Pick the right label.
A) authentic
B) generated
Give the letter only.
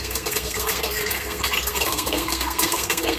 B